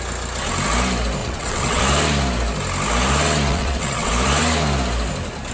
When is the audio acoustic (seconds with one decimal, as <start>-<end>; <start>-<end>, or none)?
0.0-1.2; 1.8-3.5; 4.1-5.5